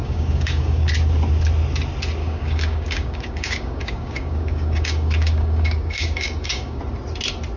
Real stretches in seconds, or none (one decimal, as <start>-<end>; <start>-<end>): 0.9-2.2; 6.8-7.6